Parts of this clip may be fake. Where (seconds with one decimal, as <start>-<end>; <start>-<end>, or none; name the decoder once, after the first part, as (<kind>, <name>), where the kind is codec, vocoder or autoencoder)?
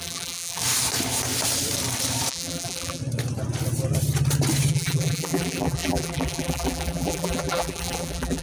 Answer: 0.0-0.6 (vocoder, BigVGAN v2); 2.3-3.0; 4.7-8.4